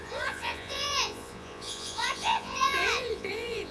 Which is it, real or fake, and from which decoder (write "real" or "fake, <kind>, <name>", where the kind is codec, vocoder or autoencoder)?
fake, vocoder, Vocos